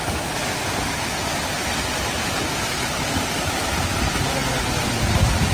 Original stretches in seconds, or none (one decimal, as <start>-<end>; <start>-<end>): none